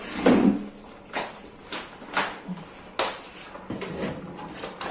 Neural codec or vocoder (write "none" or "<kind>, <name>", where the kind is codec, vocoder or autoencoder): none